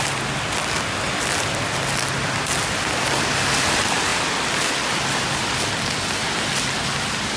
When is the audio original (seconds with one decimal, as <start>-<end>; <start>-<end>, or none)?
0.0-7.4